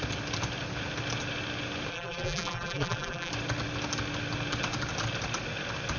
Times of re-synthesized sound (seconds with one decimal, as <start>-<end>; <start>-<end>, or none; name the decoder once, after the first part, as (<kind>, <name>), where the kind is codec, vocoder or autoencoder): 1.9-3.3 (vocoder, BigVGAN v2)